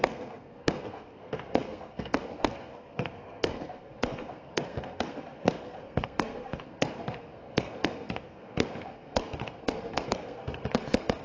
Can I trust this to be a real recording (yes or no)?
no